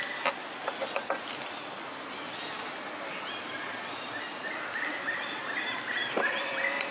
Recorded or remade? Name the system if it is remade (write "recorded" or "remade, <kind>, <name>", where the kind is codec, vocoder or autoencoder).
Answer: recorded